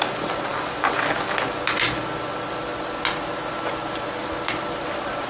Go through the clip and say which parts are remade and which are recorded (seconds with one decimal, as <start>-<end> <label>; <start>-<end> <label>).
0.0-5.3 recorded